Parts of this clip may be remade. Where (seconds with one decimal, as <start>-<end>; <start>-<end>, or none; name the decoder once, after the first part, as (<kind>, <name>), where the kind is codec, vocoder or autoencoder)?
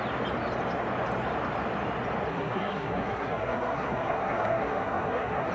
2.3-5.5 (codec, SNAC)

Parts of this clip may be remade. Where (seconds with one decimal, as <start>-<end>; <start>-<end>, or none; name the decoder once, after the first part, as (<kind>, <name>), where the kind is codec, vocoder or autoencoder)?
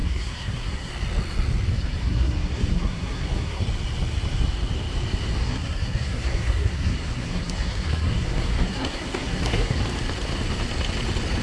0.0-0.9 (codec, SNAC); 1.7-3.6; 5.4-9.8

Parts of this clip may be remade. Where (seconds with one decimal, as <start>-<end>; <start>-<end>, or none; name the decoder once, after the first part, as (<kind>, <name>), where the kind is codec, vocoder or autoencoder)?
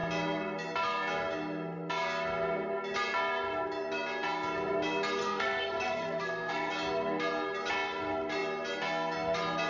5.2-6.7 (codec, SNAC)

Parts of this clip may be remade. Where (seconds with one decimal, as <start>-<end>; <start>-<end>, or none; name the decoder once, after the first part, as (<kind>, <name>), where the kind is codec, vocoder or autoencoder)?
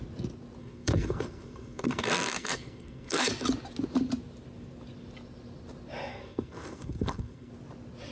0.6-3.3 (codec, SNAC); 6.1-7.5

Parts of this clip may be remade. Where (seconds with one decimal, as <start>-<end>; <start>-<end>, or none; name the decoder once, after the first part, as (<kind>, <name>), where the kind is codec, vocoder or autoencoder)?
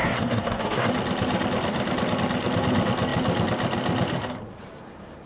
0.0-0.9 (codec, SNAC)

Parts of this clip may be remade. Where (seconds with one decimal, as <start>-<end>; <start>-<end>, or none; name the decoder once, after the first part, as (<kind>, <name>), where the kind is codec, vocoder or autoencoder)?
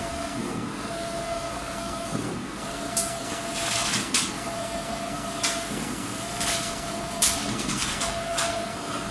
0.0-9.1 (codec, SNAC)